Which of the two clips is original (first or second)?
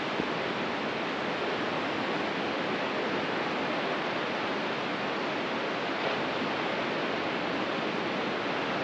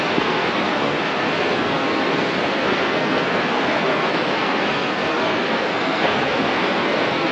first